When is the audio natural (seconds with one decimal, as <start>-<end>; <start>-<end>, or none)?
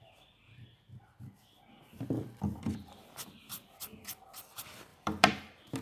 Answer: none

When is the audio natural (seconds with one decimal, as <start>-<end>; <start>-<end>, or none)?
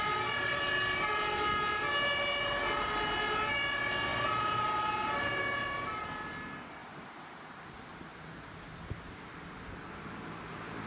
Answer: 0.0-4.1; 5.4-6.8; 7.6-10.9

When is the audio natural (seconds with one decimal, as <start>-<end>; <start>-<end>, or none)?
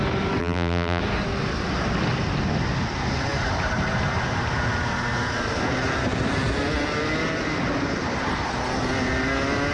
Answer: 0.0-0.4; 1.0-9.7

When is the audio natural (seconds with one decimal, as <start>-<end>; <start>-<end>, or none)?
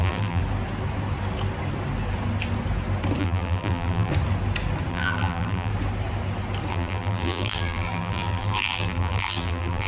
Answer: 0.4-3.2; 4.1-4.9; 5.7-6.7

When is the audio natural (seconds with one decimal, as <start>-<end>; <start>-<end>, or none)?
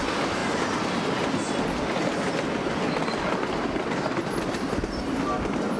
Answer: 0.0-5.8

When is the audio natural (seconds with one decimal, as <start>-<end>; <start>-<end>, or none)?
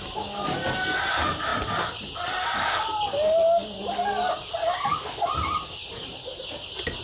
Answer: 0.0-7.0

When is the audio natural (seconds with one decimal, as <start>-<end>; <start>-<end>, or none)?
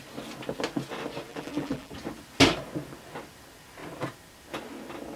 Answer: 0.0-1.3; 1.9-5.2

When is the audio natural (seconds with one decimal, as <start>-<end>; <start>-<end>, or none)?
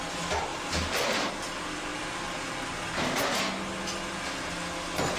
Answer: 0.0-0.5; 1.3-5.2